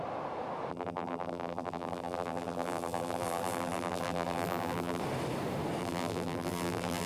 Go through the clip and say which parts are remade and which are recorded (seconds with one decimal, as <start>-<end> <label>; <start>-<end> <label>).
0.0-0.7 recorded; 0.7-5.0 remade; 5.0-5.8 recorded; 5.8-7.1 remade